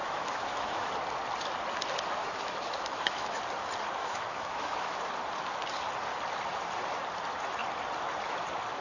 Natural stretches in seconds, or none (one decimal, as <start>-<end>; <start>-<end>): 0.9-2.2; 3.4-4.0; 5.0-8.8